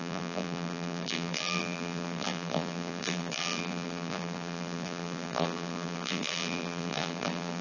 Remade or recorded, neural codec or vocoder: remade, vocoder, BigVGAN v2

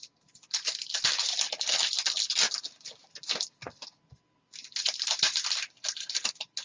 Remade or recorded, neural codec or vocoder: recorded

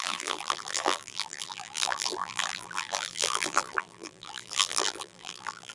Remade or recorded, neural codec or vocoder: remade, vocoder, BigVGAN v2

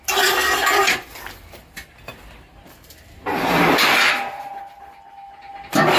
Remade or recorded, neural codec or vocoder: recorded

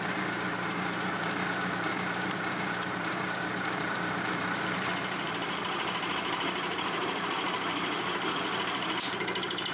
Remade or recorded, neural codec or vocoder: remade, vocoder, BigVGAN v2